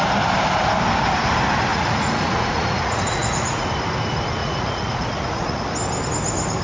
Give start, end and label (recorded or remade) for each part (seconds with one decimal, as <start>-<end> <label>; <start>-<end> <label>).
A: 0.0-1.7 recorded; 1.7-3.7 remade; 3.7-4.4 recorded; 4.4-5.7 remade; 5.7-6.6 recorded